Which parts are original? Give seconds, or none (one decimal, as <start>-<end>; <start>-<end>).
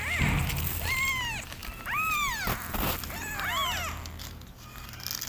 0.0-5.3